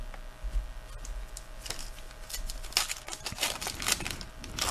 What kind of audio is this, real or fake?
real